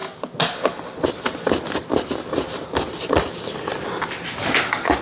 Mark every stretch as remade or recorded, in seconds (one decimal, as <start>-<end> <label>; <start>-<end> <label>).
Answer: 0.0-5.0 recorded

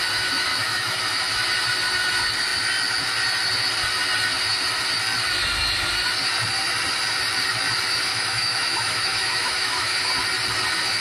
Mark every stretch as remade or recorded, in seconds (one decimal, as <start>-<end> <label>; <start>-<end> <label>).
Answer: 0.0-0.5 recorded; 0.5-1.0 remade; 1.0-8.1 recorded; 8.1-10.1 remade; 10.1-11.0 recorded

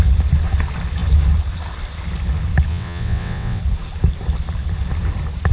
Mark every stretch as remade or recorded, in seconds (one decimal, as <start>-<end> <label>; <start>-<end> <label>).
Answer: 0.0-2.7 recorded; 2.7-3.6 remade; 3.6-5.5 recorded

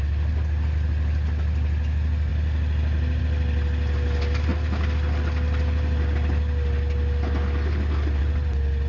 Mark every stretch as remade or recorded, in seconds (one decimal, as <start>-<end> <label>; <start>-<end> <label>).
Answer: 0.0-8.9 recorded

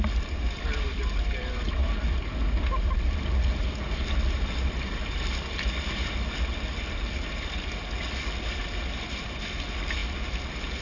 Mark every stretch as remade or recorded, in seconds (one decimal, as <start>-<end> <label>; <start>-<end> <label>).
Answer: 0.0-10.8 recorded